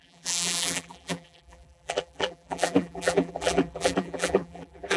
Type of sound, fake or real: fake